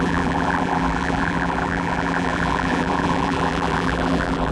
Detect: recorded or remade remade